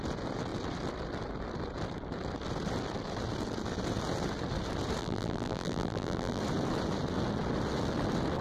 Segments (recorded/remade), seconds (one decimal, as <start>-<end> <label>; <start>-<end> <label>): 0.0-5.0 recorded; 5.0-6.4 remade; 6.4-8.4 recorded